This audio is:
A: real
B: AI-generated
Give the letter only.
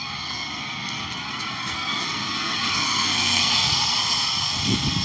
B